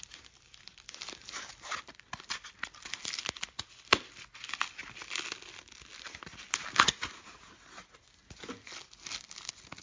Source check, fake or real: real